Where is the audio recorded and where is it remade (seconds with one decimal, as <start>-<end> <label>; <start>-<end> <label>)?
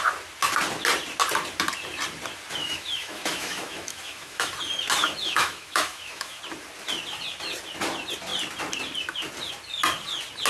0.0-2.6 recorded; 2.6-4.5 remade; 4.5-5.0 recorded; 5.0-6.4 remade; 6.4-10.5 recorded